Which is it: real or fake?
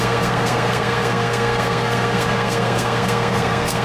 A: fake